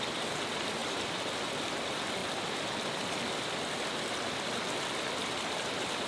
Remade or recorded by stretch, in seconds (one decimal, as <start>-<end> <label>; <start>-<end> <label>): 0.0-6.1 recorded